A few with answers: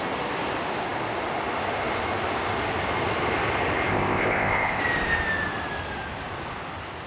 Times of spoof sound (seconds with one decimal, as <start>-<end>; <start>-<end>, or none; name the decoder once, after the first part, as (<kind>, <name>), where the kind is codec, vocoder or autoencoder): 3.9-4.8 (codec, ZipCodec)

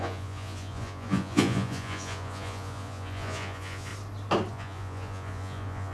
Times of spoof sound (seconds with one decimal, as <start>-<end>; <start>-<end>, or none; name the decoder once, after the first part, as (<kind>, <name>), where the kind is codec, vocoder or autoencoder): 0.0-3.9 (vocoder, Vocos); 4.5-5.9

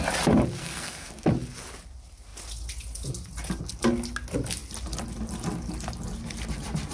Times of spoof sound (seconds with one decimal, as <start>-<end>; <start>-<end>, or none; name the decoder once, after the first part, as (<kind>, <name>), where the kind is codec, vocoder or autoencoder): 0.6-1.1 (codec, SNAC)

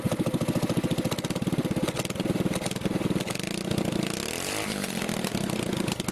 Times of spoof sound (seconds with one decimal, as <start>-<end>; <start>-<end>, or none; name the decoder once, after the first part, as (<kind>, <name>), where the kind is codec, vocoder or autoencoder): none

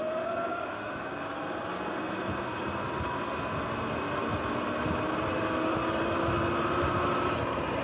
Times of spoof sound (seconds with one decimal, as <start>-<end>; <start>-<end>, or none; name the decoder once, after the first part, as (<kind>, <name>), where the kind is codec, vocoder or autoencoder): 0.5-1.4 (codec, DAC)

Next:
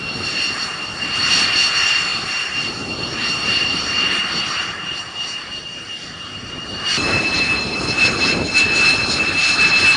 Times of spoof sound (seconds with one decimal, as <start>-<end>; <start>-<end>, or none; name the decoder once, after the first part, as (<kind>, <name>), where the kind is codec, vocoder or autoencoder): 0.0-10.0 (vocoder, BigVGAN v2)

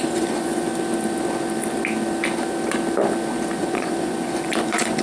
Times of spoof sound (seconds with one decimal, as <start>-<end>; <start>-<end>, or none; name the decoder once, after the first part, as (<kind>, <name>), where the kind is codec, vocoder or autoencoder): 0.0-0.7 (vocoder, Vocos); 3.6-5.0

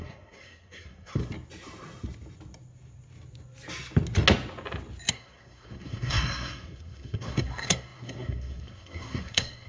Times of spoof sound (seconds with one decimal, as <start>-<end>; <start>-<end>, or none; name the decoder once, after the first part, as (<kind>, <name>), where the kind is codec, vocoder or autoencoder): 0.0-1.2 (codec, SNAC); 5.1-9.7